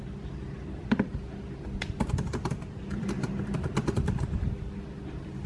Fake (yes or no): yes